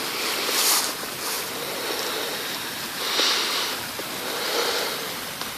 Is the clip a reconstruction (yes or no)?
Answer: no